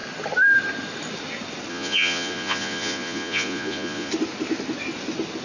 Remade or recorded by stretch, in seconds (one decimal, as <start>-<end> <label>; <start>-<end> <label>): 0.0-1.7 recorded; 1.7-4.1 remade; 4.1-5.4 recorded